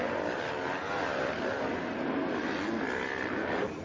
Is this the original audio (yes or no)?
yes